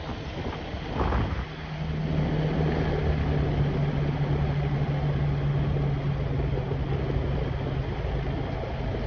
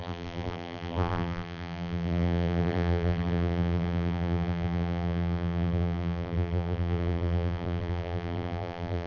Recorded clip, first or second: first